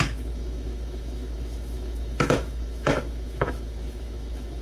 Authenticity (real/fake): fake